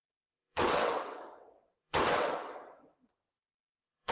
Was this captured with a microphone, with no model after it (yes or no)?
no